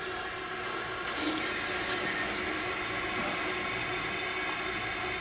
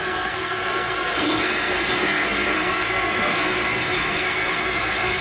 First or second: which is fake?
second